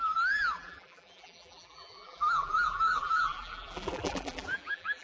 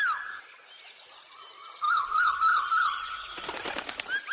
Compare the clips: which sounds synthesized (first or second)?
first